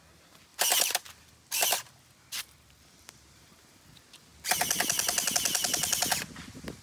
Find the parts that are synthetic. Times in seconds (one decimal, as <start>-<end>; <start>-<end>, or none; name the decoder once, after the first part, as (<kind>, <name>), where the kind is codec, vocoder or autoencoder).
0.5-3.8 (vocoder, BigVGAN v2)